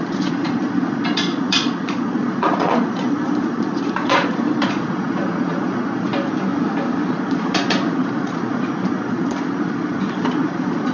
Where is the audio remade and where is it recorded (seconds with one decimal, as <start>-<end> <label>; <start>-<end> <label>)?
0.0-6.1 remade; 6.1-7.1 recorded; 7.1-10.9 remade